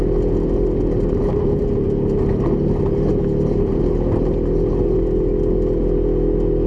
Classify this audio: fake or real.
real